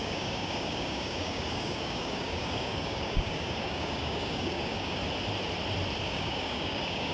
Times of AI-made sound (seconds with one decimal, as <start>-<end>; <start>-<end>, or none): 0.0-5.0; 6.0-7.1